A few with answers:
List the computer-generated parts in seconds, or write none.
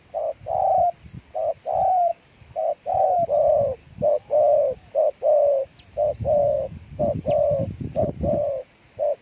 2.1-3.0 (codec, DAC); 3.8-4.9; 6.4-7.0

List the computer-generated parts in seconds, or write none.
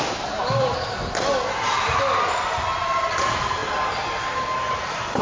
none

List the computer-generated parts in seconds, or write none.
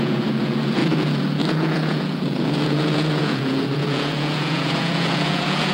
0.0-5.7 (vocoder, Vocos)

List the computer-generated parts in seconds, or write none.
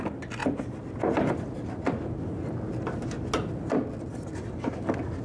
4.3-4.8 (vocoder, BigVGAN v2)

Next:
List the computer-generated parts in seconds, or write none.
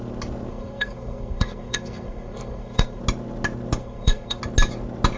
0.5-3.0 (codec, SNAC); 3.8-4.4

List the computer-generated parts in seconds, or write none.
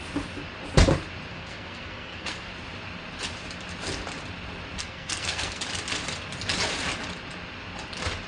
1.3-2.5 (codec, SNAC); 4.8-5.6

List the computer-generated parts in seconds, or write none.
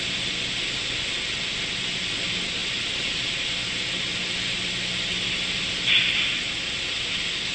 none